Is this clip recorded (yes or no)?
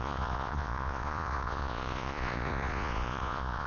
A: no